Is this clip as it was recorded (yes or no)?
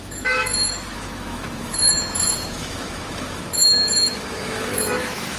no